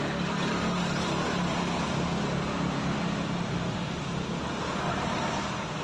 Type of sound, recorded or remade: recorded